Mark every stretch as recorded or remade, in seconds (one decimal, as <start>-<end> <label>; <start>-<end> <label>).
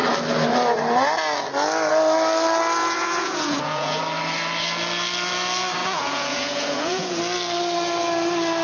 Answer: 0.0-2.8 recorded; 2.8-4.0 remade; 4.0-5.8 recorded; 5.8-7.2 remade; 7.2-8.6 recorded